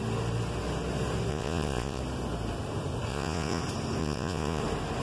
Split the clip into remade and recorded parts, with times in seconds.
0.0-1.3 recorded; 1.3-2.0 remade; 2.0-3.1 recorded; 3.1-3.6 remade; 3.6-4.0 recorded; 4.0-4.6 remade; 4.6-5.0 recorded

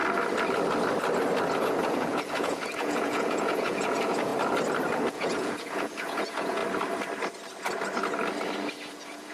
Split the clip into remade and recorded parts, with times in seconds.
0.0-1.6 recorded; 1.6-4.3 remade; 4.3-5.1 recorded; 5.1-6.6 remade; 6.6-8.9 recorded; 8.9-9.3 remade

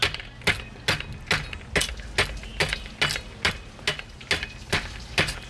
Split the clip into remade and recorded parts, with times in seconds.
0.0-5.5 recorded

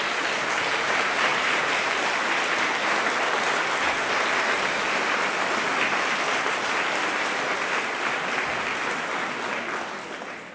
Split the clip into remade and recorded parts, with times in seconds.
0.0-1.3 recorded; 1.3-1.9 remade; 1.9-10.5 recorded

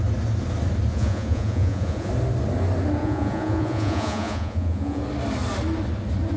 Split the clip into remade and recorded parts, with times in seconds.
0.0-0.9 recorded; 0.9-2.1 remade; 2.1-3.0 recorded; 3.0-5.0 remade; 5.0-6.4 recorded